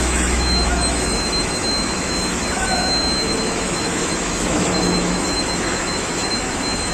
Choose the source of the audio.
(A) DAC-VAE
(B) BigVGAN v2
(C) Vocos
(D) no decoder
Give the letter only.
A